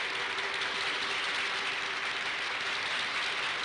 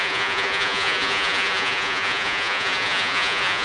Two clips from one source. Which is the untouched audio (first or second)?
first